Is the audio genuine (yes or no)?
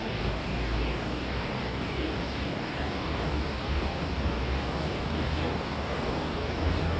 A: no